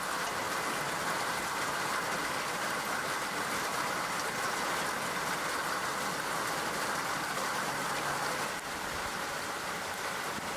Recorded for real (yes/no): yes